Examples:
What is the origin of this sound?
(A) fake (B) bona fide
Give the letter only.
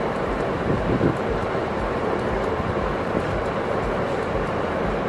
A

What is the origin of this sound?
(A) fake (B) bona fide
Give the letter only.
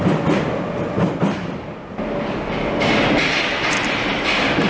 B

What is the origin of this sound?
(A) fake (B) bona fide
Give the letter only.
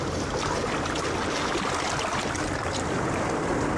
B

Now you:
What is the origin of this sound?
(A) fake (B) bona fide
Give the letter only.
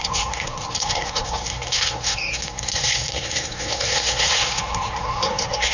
A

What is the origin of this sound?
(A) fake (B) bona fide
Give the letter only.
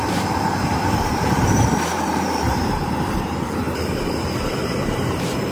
A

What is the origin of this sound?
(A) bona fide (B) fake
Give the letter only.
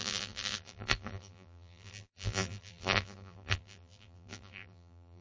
B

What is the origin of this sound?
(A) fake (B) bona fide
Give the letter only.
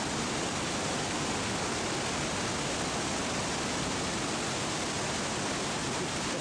B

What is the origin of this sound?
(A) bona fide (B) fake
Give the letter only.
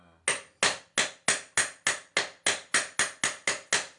A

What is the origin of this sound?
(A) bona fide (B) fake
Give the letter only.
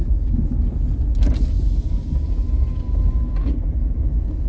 A